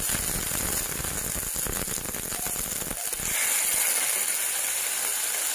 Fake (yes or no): no